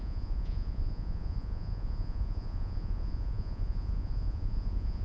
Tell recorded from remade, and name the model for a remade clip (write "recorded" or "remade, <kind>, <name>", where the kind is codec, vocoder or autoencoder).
remade, vocoder, Vocos